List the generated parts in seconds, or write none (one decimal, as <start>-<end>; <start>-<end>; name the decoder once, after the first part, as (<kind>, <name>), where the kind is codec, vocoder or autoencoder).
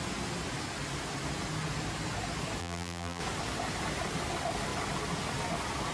2.6-3.2 (vocoder, BigVGAN v2)